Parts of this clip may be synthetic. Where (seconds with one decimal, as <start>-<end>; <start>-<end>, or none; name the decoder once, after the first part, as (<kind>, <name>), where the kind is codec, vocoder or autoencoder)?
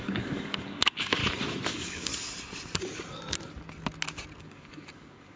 0.0-1.2 (codec, DAC); 1.7-2.1; 4.4-5.4